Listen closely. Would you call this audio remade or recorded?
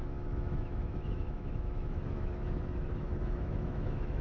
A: remade